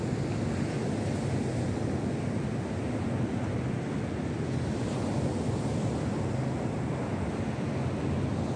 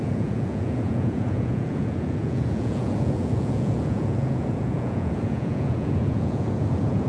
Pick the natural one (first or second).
first